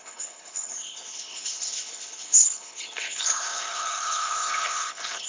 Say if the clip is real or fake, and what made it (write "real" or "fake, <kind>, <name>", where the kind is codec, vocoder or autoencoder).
fake, codec, HILCodec